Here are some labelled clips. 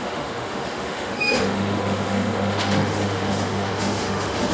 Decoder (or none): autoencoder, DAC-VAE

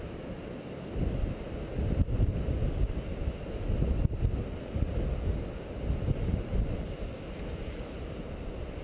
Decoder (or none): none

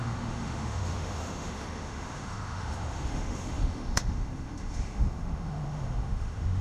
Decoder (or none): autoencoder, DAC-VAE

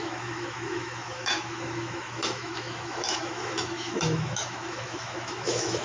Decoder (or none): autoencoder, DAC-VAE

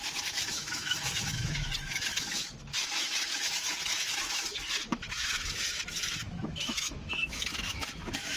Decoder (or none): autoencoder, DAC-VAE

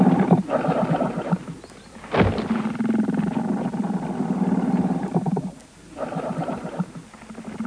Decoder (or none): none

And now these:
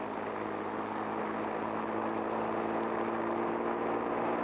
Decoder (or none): none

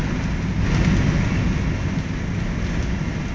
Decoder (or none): none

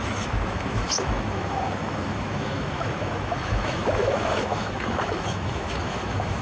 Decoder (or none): autoencoder, DAC-VAE